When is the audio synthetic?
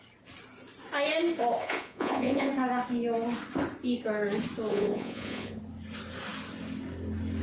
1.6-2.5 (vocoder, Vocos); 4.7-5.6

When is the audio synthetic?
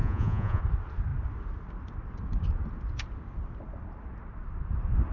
0.0-0.6 (vocoder, Vocos)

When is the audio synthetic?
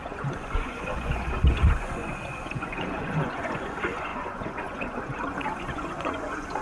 0.0-6.6 (vocoder, Vocos)